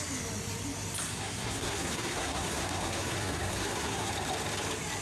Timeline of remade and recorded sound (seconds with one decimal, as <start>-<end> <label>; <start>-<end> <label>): 0.0-1.1 recorded; 1.1-4.1 remade; 4.1-5.0 recorded